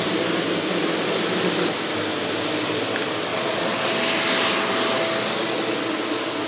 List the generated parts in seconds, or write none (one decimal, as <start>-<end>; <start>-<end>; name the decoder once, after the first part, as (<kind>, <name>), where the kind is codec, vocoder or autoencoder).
3.3-3.9 (vocoder, Vocos)